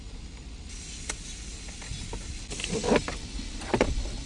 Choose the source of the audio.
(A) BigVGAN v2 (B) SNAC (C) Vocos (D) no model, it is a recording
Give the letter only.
D